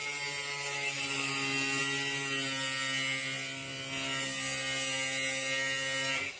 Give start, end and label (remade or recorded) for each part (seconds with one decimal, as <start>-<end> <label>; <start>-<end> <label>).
0.0-6.4 recorded